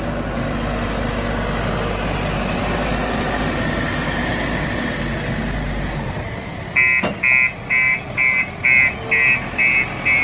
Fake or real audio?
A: real